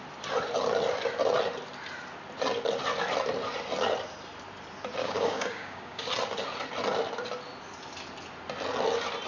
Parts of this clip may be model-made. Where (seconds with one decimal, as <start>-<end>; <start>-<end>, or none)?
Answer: 5.0-6.1